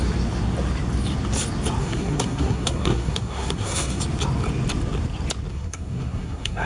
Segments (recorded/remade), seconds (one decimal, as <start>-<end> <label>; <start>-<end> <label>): 0.0-1.8 recorded; 1.8-4.0 remade; 4.0-5.5 recorded; 5.5-6.7 remade